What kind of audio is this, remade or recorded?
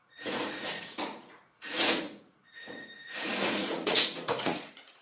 remade